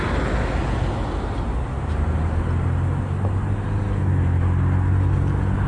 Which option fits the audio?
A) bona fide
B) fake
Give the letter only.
A